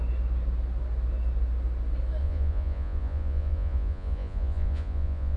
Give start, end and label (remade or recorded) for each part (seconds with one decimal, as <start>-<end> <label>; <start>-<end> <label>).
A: 0.0-2.2 recorded; 2.2-5.4 remade

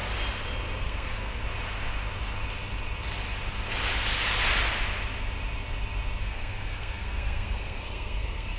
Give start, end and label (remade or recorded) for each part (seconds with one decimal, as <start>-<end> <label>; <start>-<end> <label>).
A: 0.0-0.8 recorded; 0.8-1.4 remade; 1.4-6.2 recorded; 6.2-8.6 remade

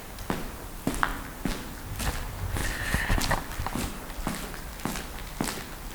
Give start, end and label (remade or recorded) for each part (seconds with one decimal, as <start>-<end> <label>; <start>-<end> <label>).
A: 0.0-2.6 recorded; 2.6-4.1 remade; 4.1-5.9 recorded

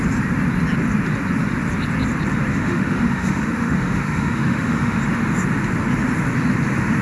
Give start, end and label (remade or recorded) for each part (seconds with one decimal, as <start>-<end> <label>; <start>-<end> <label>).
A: 0.0-2.5 recorded; 2.5-5.0 remade; 5.0-7.0 recorded

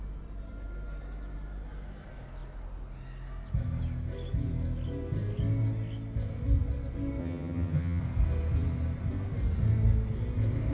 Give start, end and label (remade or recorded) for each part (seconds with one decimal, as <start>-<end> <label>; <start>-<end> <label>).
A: 0.0-7.2 recorded; 7.2-8.0 remade; 8.0-10.7 recorded